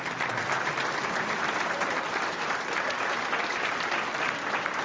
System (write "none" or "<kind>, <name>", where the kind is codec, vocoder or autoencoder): none